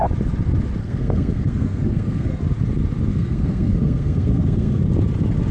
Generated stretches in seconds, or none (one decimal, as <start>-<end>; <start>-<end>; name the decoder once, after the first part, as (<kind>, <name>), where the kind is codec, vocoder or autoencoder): 0.8-2.4 (codec, SNAC); 3.1-4.8